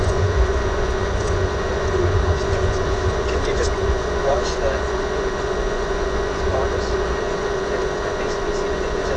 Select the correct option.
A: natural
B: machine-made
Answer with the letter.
B